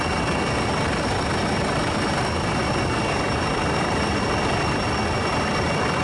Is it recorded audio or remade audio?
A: remade